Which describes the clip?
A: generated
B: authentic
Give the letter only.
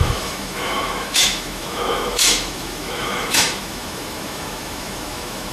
A